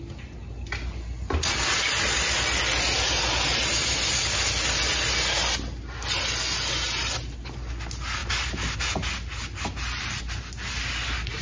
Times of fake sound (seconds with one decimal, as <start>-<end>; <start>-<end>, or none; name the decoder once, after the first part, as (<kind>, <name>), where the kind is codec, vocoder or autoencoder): none